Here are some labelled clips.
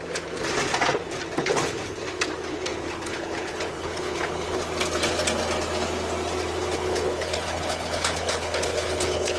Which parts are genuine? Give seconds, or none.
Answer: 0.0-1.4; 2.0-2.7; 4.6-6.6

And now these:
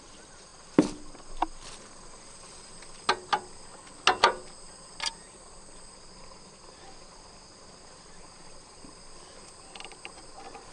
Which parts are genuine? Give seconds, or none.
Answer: 0.0-10.7

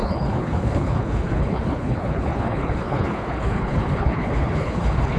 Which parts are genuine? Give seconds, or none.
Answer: none

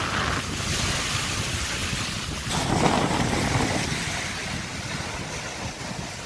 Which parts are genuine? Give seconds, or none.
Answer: 0.0-6.3